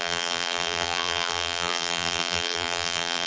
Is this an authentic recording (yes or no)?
no